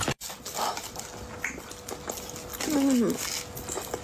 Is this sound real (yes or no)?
yes